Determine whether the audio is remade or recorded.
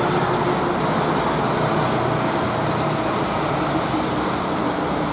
recorded